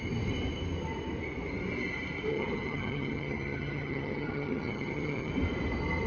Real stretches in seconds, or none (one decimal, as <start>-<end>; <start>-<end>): 0.0-2.3; 5.3-6.1